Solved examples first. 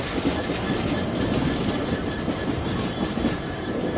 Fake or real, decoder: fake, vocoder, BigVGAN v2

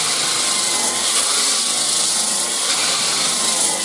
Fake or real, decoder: real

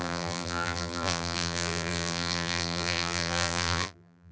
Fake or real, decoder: fake, vocoder, BigVGAN v2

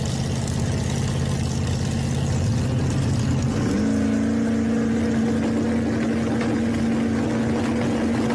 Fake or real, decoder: real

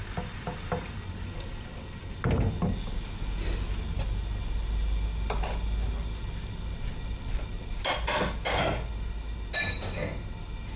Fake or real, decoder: real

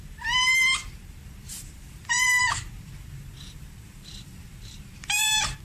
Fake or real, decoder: fake, vocoder, BigVGAN v2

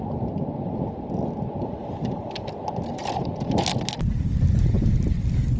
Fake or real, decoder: fake, vocoder, BigVGAN v2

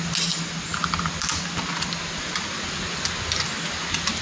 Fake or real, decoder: real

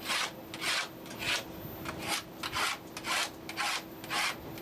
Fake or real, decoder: real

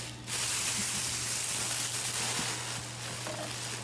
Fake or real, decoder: real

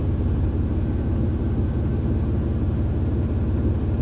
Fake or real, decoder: real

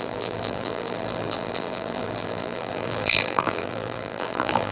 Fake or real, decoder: fake, vocoder, BigVGAN v2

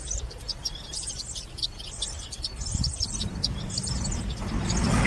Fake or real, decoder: fake, vocoder, BigVGAN v2